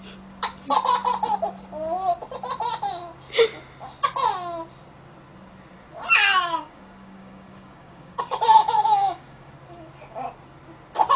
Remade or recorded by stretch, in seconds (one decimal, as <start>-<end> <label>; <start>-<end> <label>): 0.0-6.2 recorded; 6.2-9.5 remade; 9.5-11.2 recorded